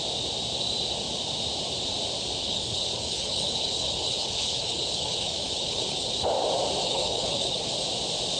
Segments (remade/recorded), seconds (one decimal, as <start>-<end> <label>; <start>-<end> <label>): 0.0-2.4 recorded; 2.4-6.2 remade; 6.2-6.8 recorded; 6.8-7.7 remade; 7.7-8.4 recorded